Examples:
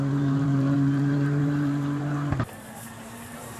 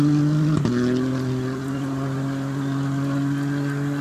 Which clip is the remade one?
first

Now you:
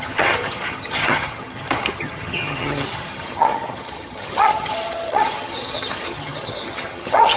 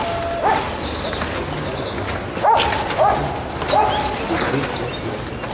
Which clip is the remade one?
first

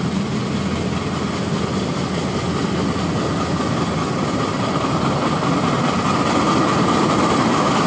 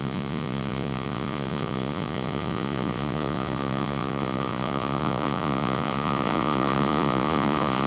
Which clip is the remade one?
second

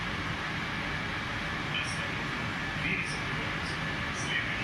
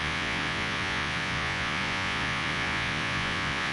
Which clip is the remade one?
second